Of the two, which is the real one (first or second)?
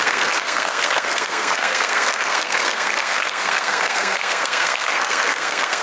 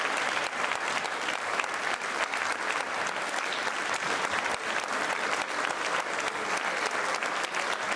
second